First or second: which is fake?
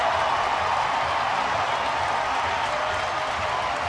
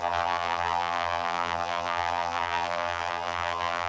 second